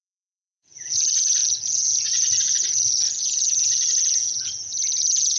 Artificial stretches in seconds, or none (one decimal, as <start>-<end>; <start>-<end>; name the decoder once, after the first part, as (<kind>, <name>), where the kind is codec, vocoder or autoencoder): 0.0-5.4 (vocoder, Vocos)